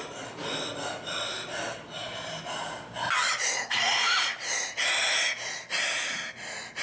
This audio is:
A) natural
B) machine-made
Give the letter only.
A